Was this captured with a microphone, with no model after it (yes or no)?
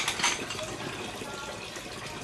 yes